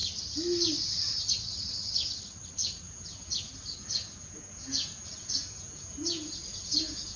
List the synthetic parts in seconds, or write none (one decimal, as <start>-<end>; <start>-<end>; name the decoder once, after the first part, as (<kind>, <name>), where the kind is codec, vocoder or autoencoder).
2.6-7.2 (vocoder, Vocos)